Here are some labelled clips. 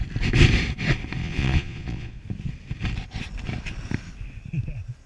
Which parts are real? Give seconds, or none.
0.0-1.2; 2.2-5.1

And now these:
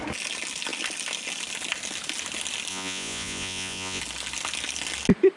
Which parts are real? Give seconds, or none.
0.0-2.7; 4.0-5.4

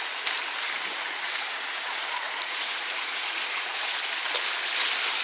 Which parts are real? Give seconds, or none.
0.0-0.9; 4.0-5.2

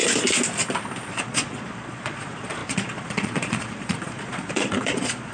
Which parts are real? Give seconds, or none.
0.0-1.1

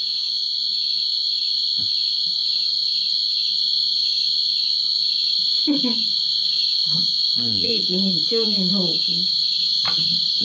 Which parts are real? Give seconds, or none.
0.0-6.6; 8.7-10.4

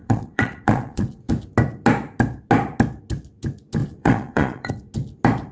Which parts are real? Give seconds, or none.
1.3-3.8; 4.7-5.5

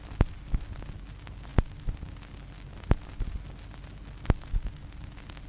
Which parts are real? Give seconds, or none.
0.0-5.5